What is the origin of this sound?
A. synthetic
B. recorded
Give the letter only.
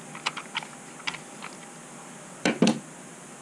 B